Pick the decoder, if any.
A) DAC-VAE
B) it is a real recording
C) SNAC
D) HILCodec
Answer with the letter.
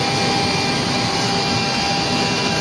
B